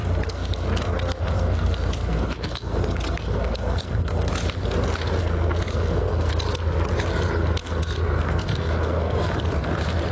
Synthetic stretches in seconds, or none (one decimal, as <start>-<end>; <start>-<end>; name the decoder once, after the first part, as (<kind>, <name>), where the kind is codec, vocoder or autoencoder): 0.0-4.3 (codec, SNAC); 5.2-6.3; 7.6-9.4